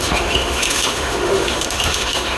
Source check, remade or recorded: remade